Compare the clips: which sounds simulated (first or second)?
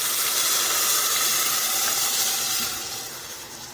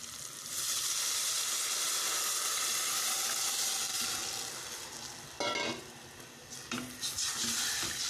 first